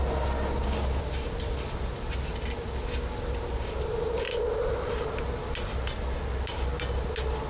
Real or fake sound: real